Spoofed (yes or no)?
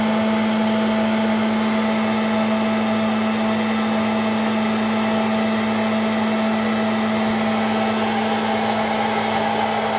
no